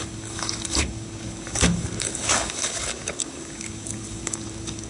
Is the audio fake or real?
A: fake